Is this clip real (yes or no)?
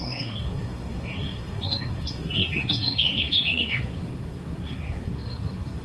no